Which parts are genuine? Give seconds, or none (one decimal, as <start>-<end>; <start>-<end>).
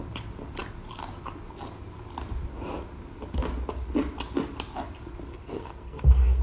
0.0-5.3